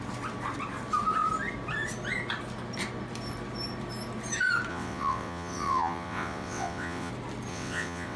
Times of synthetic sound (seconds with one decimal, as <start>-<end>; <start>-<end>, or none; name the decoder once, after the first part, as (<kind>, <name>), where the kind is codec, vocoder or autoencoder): 4.7-7.1 (vocoder, WaveNeXt); 7.5-8.2